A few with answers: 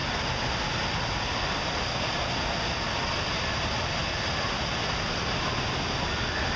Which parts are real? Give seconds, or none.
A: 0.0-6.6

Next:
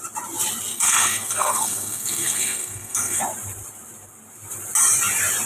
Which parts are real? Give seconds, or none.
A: 0.0-0.7; 3.2-5.5

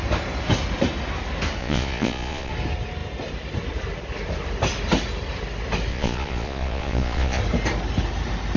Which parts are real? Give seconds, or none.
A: 0.0-1.6; 2.5-5.9; 7.4-8.6